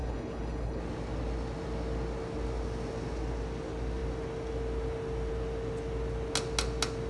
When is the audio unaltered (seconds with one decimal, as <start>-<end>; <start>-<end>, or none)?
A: 0.8-7.1